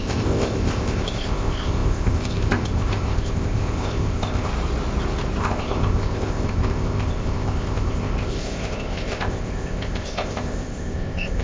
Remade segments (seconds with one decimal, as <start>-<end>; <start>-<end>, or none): 0.0-4.5; 5.4-11.4